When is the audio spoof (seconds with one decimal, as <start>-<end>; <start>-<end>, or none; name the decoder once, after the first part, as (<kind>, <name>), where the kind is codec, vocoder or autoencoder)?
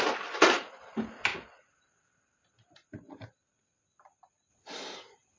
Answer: none